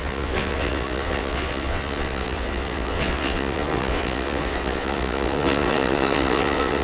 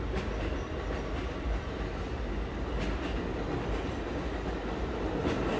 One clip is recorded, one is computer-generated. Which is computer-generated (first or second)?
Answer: first